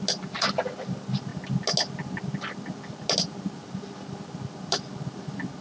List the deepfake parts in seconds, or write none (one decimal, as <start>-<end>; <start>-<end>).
none